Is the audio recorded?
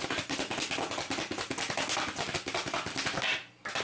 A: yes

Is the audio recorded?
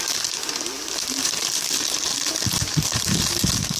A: no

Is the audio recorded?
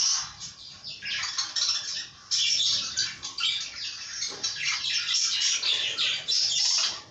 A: yes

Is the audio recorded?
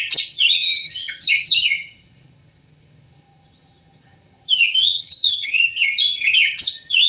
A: no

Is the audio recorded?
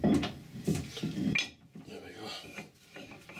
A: yes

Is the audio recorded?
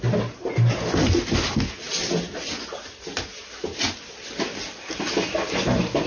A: yes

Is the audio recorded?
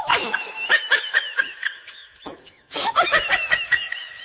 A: no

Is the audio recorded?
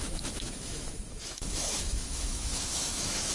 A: no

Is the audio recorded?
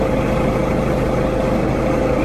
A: yes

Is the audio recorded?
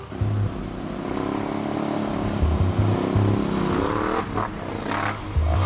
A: yes